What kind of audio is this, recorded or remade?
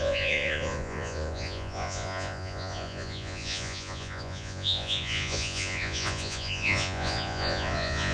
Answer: remade